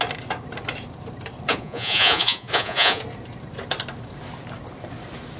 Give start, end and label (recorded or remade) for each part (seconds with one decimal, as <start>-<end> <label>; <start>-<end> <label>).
0.0-1.5 recorded; 1.5-3.0 remade; 3.0-5.4 recorded